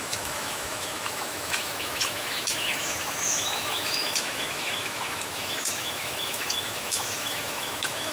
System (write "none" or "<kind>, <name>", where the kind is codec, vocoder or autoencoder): autoencoder, DAC-VAE